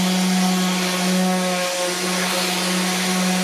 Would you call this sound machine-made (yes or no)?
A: no